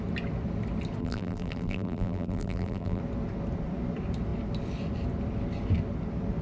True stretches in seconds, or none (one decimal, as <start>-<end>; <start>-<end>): 0.0-1.0; 3.0-6.4